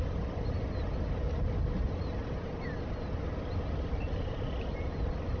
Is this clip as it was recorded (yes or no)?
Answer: yes